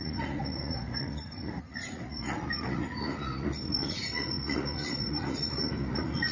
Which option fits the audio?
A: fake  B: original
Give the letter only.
A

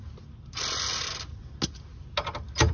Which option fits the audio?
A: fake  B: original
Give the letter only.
B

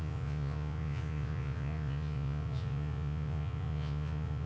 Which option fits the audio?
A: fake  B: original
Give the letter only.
A